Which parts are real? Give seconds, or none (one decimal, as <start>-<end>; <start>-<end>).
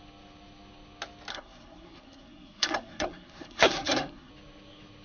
0.0-1.3; 4.3-5.0